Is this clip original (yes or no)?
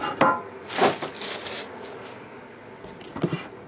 yes